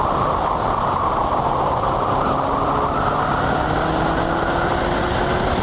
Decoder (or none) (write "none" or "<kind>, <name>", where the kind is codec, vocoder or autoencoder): none